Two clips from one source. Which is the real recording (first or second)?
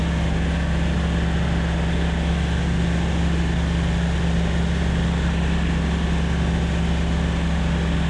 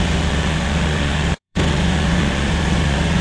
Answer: first